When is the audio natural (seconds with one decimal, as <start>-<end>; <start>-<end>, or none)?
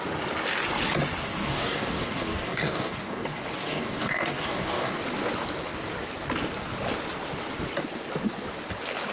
0.0-1.2; 5.0-9.1